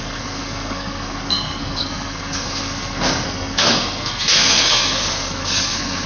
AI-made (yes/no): yes